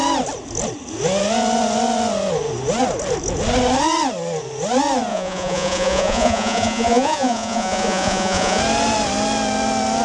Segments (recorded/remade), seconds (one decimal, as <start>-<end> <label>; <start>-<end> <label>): 0.0-5.1 recorded; 5.1-8.6 remade; 8.6-10.0 recorded